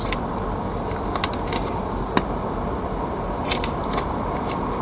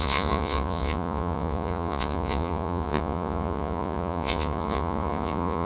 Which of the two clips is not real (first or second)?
second